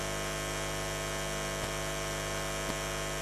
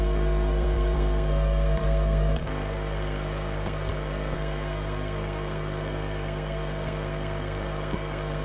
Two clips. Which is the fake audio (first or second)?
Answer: second